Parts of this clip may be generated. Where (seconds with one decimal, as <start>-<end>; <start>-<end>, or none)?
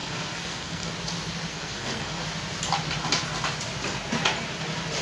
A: 0.0-0.9; 1.5-2.2